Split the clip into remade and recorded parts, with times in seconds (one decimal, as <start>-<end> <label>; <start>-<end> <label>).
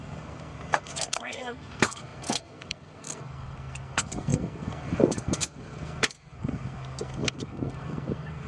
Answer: 0.0-8.5 remade